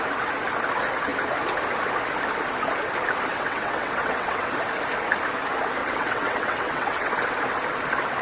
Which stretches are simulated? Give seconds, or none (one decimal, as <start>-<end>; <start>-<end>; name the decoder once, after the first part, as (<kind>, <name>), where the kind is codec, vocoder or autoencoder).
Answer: 3.3-4.5 (vocoder, WaveNeXt); 5.8-7.1